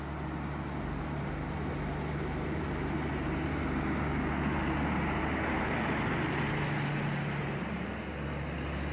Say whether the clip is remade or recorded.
recorded